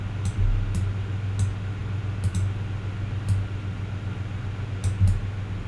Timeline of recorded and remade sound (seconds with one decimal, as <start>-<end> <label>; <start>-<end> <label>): 0.0-5.7 recorded